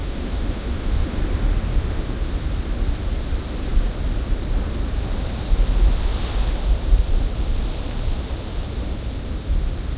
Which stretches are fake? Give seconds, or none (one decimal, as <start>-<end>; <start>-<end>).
0.0-1.2; 1.7-2.3